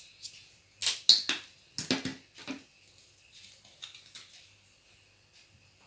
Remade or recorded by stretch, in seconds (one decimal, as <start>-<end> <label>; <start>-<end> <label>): 0.0-5.9 recorded